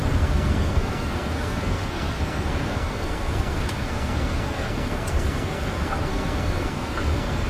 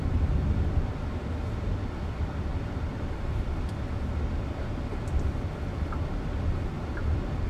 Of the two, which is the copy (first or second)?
first